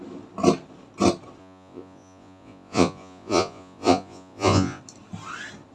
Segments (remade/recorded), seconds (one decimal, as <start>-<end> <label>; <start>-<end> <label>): 0.0-1.4 recorded; 1.4-4.8 remade; 4.8-5.7 recorded